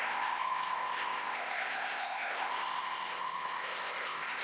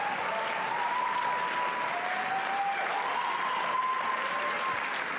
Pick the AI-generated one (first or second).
first